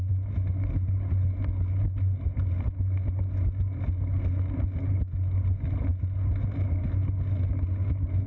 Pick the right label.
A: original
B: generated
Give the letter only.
A